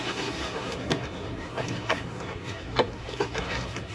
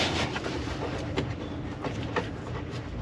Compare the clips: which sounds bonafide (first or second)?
second